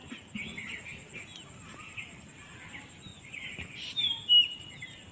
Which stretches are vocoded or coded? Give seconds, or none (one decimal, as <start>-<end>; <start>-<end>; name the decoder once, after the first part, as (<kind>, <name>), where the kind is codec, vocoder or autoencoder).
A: 3.1-3.9 (vocoder, Vocos)